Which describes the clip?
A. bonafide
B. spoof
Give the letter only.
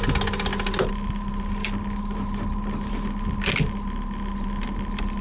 A